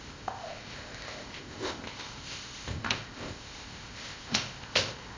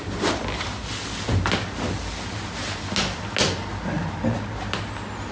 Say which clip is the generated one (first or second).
first